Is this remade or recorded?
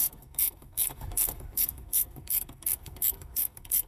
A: remade